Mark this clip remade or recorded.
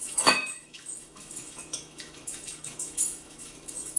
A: remade